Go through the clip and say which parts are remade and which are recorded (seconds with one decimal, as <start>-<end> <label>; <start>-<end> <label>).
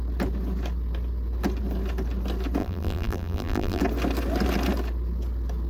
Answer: 0.0-2.6 recorded; 2.6-3.8 remade; 3.8-5.7 recorded